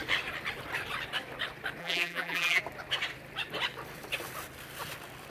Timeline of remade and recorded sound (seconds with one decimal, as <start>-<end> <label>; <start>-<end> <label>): 0.0-1.8 recorded; 1.8-2.6 remade; 2.6-5.3 recorded